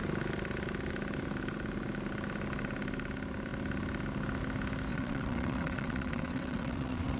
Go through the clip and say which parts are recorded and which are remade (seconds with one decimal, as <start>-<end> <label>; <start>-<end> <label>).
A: 0.0-4.9 recorded; 4.9-7.2 remade

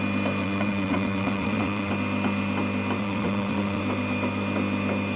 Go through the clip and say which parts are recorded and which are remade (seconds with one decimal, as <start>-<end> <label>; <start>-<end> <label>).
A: 0.0-0.4 recorded; 0.4-1.9 remade; 1.9-3.0 recorded; 3.0-3.8 remade; 3.8-5.2 recorded

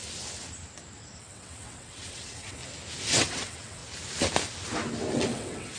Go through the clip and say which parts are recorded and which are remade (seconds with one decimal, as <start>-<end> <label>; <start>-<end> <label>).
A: 0.0-1.2 recorded; 1.2-2.6 remade; 2.6-3.1 recorded; 3.1-3.8 remade; 3.8-5.1 recorded; 5.1-5.8 remade

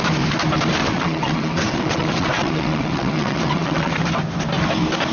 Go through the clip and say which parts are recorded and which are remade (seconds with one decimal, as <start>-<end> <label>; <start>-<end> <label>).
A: 0.0-0.8 recorded; 0.8-3.9 remade; 3.9-5.1 recorded